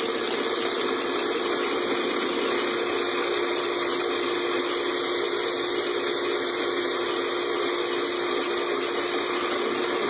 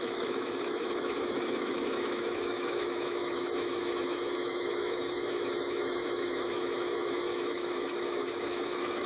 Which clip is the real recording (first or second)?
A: first